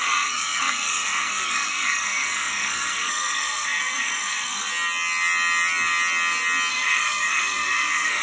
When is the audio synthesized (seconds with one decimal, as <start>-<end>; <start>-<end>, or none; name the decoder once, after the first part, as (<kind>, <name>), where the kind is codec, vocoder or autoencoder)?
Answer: 0.0-4.7 (codec, SNAC); 6.7-8.2